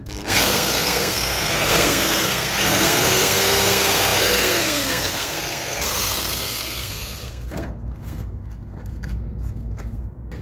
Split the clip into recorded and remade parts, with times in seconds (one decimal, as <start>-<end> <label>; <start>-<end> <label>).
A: 0.0-10.4 remade